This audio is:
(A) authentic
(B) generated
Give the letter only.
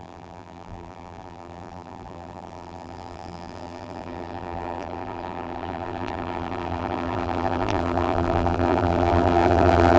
B